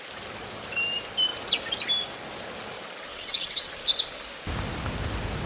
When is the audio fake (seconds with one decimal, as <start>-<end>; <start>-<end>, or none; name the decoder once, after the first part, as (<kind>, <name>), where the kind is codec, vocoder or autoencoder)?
3.1-3.7 (vocoder, WaveNeXt)